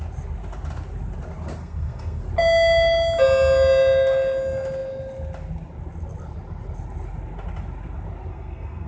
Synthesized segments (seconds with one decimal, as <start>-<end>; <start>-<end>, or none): 1.6-2.2; 8.3-8.9